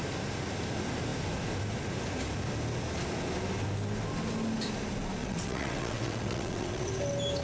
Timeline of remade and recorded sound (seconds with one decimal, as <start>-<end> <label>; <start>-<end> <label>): 0.0-5.2 recorded; 5.2-6.9 remade; 6.9-7.4 recorded